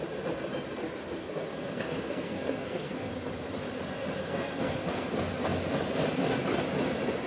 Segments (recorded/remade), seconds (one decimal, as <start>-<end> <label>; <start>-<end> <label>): 0.0-1.0 recorded; 1.0-3.1 remade; 3.1-4.2 recorded; 4.2-5.1 remade; 5.1-7.3 recorded